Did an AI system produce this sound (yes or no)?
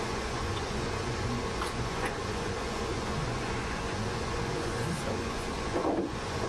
yes